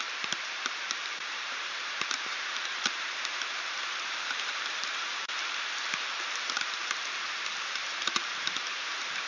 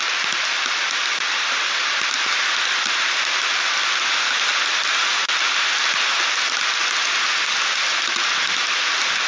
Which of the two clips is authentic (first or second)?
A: second